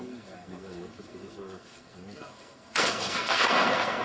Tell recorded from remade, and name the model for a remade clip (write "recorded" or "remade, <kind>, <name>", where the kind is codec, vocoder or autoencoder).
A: remade, codec, SNAC